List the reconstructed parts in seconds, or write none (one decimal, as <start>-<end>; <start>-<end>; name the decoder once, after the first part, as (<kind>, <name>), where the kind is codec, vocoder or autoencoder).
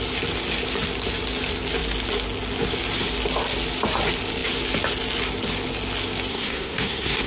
6.3-7.3 (codec, SNAC)